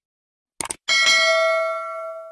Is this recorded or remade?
recorded